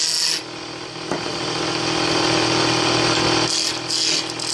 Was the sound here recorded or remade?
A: recorded